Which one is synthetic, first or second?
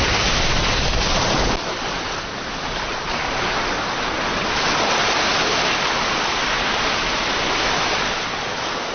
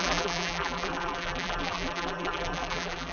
second